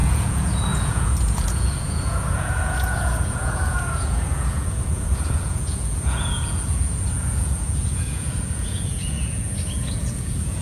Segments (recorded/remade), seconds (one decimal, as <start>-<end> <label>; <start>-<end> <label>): 0.0-10.6 remade